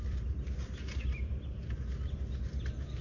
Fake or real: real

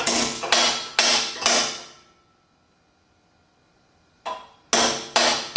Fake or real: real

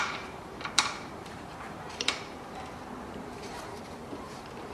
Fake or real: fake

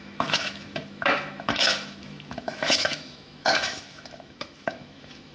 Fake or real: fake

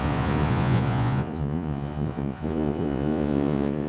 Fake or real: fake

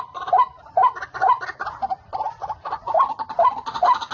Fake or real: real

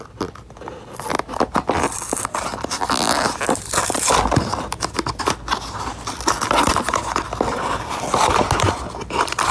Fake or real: real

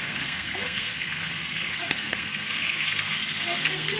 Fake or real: fake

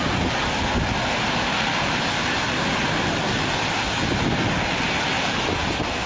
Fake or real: real